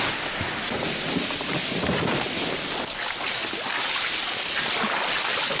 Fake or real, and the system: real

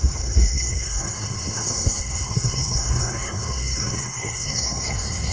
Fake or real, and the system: fake, codec, SNAC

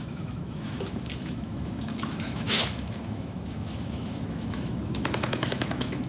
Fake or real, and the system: fake, autoencoder, DAC-VAE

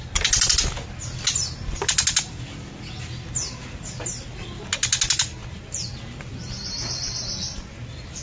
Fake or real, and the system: real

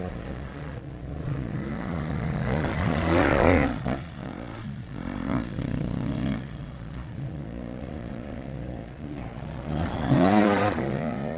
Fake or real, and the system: fake, vocoder, Vocos